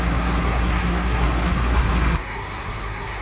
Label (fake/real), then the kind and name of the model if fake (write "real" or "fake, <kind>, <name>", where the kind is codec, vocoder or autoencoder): fake, codec, SNAC